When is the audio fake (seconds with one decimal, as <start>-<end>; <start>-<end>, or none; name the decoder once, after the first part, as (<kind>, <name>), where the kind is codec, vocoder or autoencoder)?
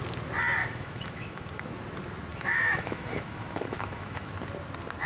0.6-1.8 (autoencoder, DAC-VAE); 2.3-4.3